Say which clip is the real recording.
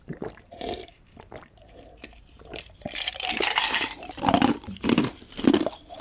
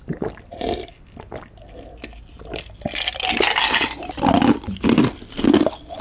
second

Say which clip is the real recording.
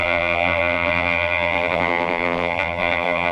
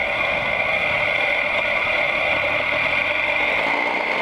second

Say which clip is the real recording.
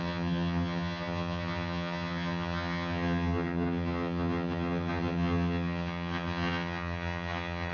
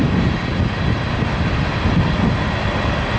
second